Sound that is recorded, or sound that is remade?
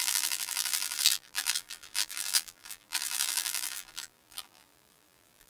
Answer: remade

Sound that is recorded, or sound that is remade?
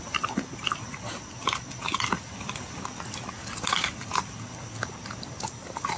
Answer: recorded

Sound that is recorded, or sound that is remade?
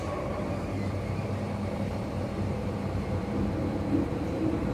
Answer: remade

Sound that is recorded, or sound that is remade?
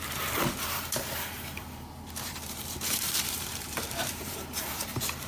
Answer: remade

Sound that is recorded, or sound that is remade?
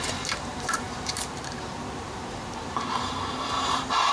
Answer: remade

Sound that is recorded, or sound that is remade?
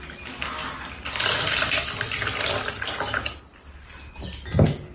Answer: recorded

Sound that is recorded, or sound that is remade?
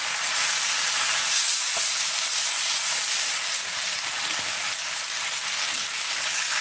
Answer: recorded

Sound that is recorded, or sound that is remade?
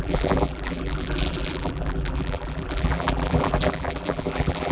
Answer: remade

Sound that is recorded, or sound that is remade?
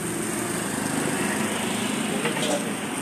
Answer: recorded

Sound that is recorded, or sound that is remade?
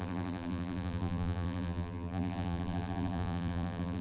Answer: remade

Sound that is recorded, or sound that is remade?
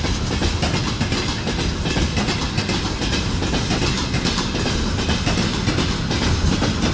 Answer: recorded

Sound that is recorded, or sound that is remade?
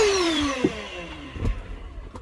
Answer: remade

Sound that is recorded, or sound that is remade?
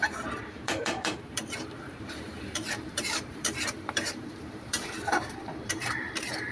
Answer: remade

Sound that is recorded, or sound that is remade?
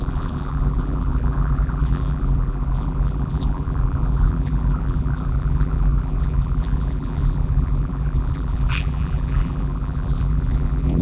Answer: remade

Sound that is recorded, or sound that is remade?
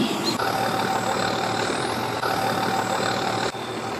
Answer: recorded